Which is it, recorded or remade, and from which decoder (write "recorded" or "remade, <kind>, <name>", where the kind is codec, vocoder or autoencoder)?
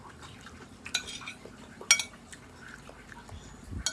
recorded